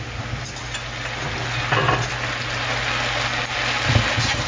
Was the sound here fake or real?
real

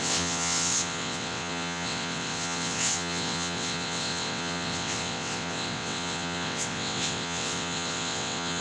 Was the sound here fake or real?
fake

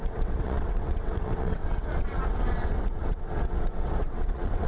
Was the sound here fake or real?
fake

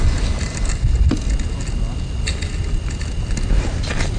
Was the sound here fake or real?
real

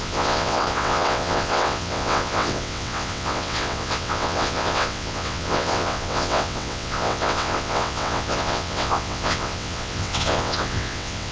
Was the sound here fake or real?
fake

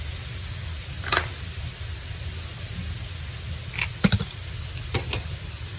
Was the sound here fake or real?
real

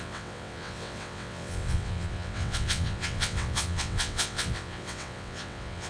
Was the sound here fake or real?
fake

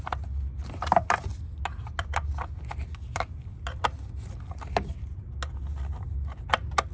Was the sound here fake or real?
real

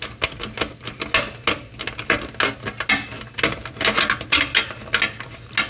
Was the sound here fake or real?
real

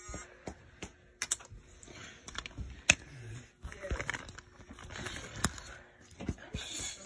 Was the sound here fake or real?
real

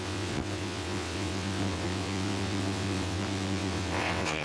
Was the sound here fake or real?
fake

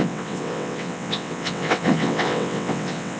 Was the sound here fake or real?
fake